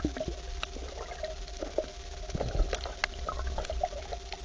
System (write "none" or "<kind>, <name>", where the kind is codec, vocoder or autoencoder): none